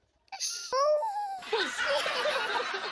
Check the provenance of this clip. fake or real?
real